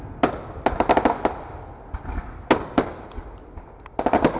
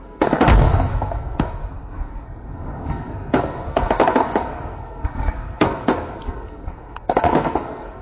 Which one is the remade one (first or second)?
second